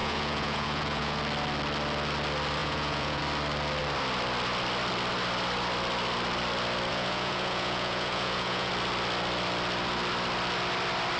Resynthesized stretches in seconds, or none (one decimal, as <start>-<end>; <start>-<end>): 0.0-1.2; 2.6-3.2; 6.9-8.7